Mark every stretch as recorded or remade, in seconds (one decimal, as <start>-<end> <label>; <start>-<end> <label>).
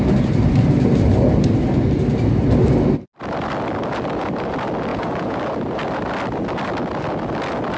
0.0-4.9 recorded; 4.9-5.4 remade; 5.4-7.8 recorded